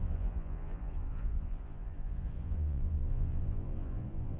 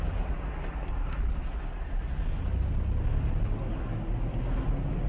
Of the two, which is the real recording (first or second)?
second